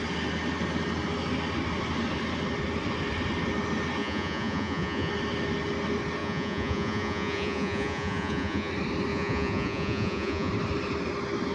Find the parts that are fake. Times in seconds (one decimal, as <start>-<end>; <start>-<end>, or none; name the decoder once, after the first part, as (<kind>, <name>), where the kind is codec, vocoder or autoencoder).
4.0-5.1 (vocoder, Vocos); 6.2-8.7; 9.1-10.5